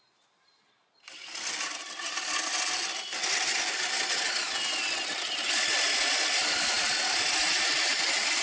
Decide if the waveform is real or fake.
real